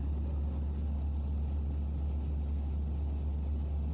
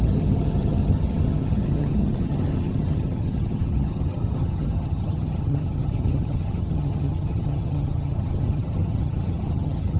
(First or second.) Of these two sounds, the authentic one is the first